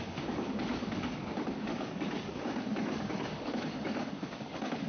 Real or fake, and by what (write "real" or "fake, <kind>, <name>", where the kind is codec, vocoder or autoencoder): fake, codec, DAC